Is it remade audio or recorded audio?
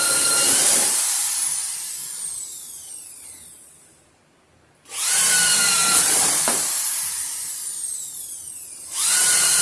remade